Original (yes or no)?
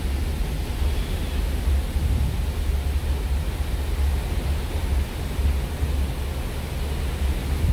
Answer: yes